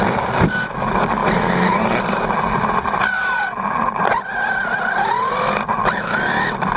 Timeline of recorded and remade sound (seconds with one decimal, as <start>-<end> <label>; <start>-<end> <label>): 0.0-6.8 recorded